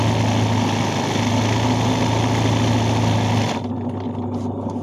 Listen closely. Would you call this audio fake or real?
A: real